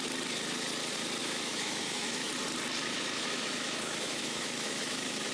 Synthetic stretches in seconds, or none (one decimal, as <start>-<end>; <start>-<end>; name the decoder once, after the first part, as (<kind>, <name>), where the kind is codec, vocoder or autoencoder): 1.2-2.3 (autoencoder, DAC-VAE); 2.8-5.3